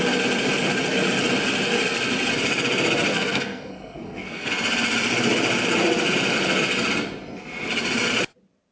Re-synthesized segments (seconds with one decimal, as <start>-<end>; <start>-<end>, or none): 3.1-4.5

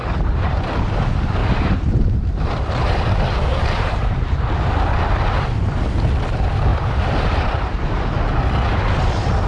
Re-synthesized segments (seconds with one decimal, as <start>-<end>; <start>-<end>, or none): 0.0-0.6; 1.4-2.4; 3.5-4.6; 6.7-8.2

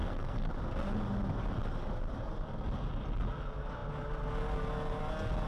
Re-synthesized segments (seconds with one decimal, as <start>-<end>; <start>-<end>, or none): 0.0-0.5

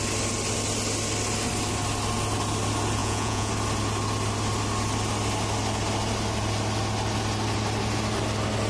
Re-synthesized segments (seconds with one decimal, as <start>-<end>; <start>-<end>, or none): 3.0-3.5

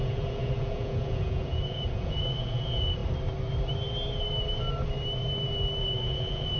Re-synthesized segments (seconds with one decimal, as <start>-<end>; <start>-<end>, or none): 0.0-3.0; 5.8-6.6

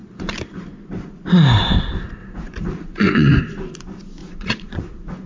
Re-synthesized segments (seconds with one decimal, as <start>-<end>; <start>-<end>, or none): 2.2-3.4; 4.2-5.3